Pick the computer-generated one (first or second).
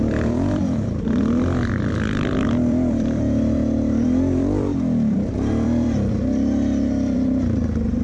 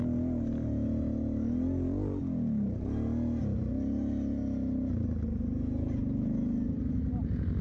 first